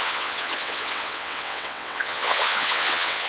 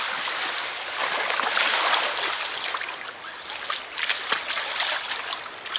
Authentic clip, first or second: second